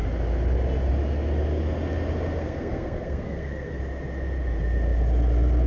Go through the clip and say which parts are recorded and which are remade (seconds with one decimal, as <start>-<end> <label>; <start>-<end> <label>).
0.0-2.4 recorded; 2.4-3.8 remade; 3.8-5.7 recorded